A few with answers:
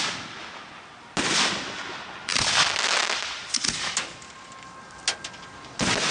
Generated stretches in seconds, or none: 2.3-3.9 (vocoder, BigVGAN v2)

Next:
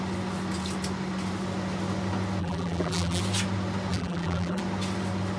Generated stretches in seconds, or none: 2.4-3.2 (vocoder, BigVGAN v2); 3.9-4.6

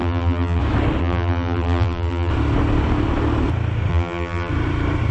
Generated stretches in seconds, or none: 0.0-0.6 (vocoder, BigVGAN v2); 1.0-2.3; 3.9-4.5